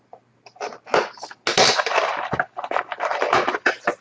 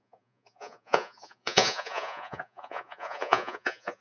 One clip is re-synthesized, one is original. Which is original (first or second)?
first